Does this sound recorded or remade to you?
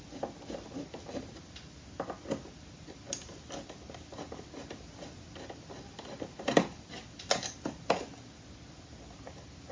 recorded